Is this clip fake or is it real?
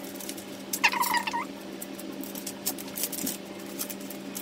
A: real